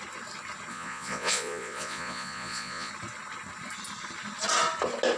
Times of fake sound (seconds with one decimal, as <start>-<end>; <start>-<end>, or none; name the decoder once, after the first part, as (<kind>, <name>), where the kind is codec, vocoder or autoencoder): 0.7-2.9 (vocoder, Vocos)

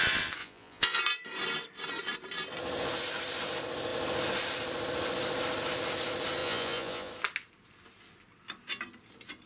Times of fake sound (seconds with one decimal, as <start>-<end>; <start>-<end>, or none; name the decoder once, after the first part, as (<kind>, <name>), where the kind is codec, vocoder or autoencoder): 0.4-1.0 (vocoder, Vocos); 6.4-7.1

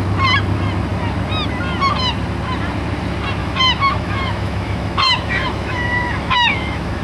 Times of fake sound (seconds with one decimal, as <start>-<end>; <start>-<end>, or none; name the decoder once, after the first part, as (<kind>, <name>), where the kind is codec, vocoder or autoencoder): 3.4-7.0 (autoencoder, DAC-VAE)